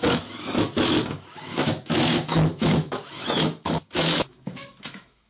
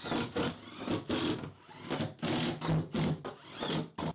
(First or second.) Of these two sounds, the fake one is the first